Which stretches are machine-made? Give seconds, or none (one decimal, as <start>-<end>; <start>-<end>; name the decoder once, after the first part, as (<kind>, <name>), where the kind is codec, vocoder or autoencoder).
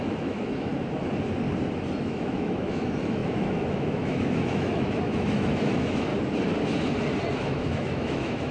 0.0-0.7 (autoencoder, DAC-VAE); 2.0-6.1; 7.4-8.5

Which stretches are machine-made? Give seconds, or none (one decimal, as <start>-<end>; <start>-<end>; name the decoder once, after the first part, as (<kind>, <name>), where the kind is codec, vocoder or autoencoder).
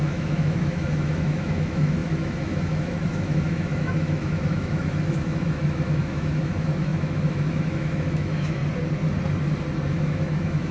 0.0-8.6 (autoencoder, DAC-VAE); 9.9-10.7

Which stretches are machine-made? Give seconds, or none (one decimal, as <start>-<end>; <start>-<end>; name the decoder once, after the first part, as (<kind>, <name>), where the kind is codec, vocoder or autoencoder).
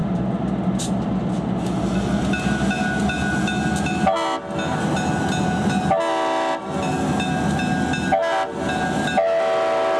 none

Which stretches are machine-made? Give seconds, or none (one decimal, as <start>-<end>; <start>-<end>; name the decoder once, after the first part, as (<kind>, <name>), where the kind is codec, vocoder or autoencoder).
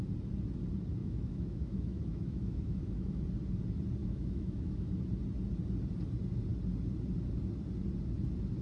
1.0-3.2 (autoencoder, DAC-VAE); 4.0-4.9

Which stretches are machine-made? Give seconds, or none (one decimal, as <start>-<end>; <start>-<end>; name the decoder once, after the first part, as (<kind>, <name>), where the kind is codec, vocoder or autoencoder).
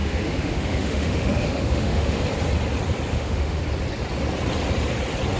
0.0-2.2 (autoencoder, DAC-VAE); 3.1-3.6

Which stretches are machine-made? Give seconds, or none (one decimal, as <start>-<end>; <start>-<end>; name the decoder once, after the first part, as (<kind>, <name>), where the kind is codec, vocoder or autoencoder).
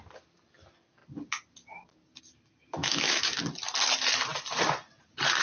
2.8-3.4 (autoencoder, DAC-VAE)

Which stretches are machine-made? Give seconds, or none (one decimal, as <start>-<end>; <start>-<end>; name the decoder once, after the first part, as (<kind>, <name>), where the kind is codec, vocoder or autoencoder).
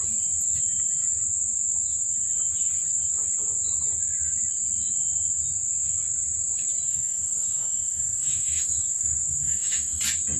6.9-10.0 (autoencoder, DAC-VAE)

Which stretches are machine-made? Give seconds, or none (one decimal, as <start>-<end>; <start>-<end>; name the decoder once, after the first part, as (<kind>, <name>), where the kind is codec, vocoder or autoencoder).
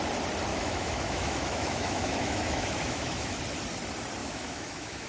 0.5-3.4 (autoencoder, DAC-VAE); 4.2-5.1